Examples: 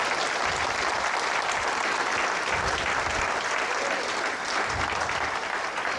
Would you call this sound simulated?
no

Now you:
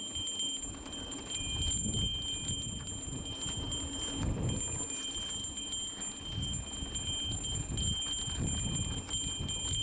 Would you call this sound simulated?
no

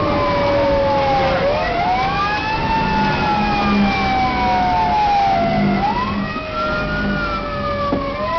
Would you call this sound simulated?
no